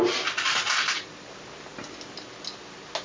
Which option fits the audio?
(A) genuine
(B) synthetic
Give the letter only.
A